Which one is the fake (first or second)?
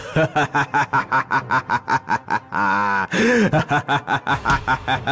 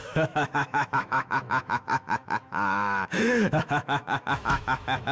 second